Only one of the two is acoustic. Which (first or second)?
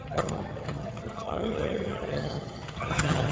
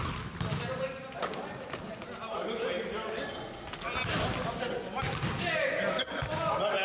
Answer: second